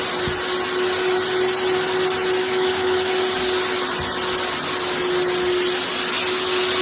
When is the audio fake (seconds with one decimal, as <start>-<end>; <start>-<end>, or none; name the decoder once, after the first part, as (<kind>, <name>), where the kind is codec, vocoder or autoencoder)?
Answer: 2.4-3.1 (autoencoder, DAC-VAE)